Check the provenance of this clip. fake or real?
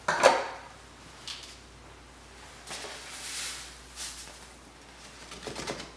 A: real